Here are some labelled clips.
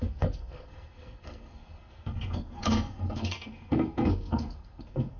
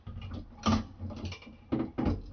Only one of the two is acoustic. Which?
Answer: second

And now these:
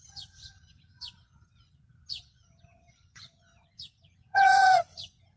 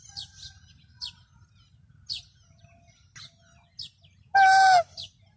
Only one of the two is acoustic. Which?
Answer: second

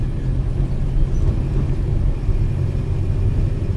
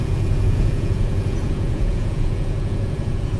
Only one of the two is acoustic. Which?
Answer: first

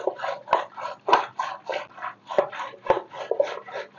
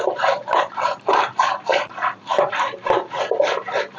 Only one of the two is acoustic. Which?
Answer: first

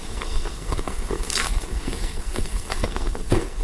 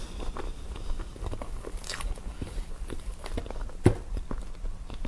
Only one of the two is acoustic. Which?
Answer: second